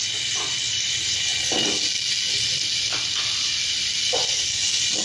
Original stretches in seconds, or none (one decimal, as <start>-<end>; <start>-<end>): 0.0-5.0